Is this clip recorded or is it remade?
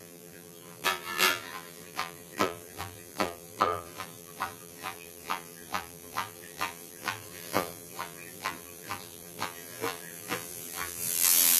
remade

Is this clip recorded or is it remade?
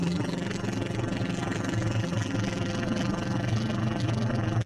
remade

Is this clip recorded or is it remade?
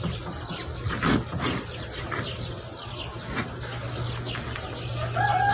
recorded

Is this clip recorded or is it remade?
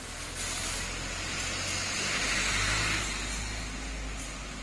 recorded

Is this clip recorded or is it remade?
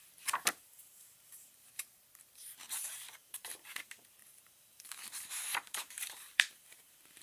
remade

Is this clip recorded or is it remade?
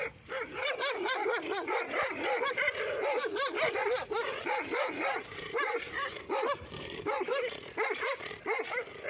remade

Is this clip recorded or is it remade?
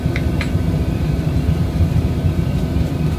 remade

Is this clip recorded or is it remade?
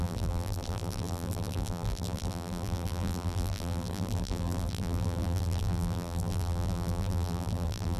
remade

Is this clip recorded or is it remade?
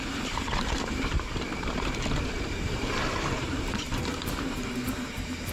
remade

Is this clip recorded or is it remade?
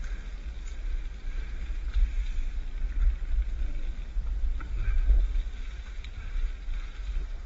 recorded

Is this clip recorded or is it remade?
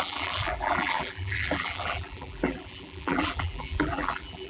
remade